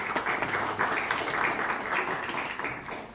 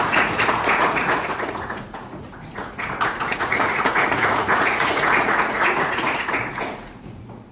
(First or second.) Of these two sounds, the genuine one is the first